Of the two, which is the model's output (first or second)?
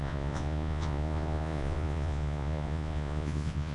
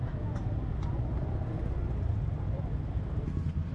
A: first